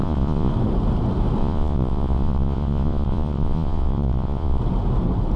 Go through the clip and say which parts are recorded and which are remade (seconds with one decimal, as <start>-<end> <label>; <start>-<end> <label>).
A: 0.0-0.5 remade; 0.5-1.4 recorded; 1.4-4.6 remade; 4.6-5.4 recorded